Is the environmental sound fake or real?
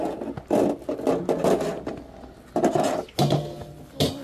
real